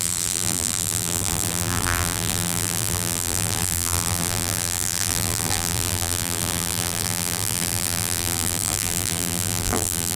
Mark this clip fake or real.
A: fake